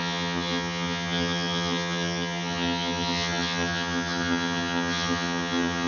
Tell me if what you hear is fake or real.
fake